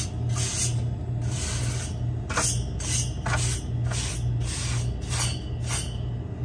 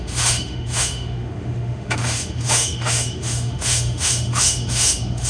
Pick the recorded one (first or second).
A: first